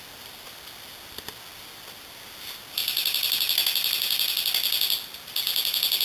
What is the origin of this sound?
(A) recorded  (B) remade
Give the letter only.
A